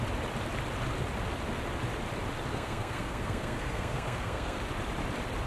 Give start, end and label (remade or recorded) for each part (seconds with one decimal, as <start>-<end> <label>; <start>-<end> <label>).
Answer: 0.0-2.5 recorded; 2.5-4.6 remade; 4.6-5.5 recorded